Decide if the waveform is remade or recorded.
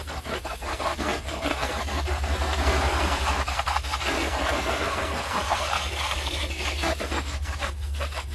remade